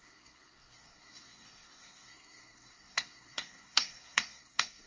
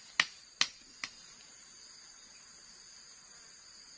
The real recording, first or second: second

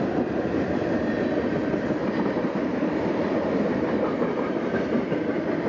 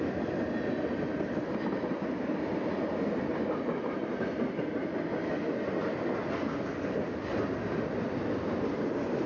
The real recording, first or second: second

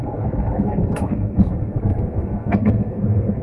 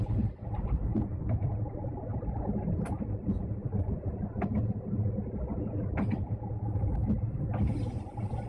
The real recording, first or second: second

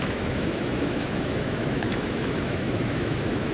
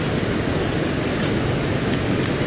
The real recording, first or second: second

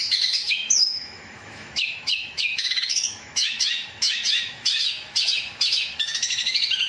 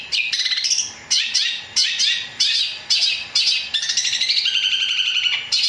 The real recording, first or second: second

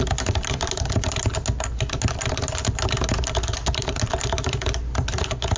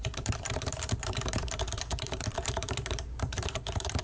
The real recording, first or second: first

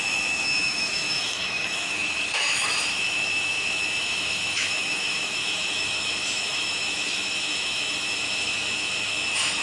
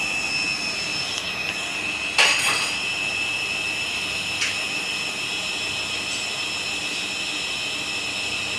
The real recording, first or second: second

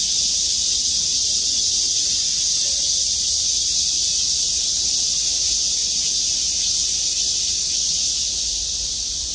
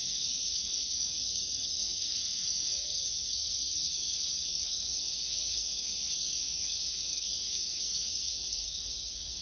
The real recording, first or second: first